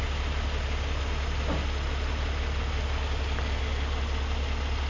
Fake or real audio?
real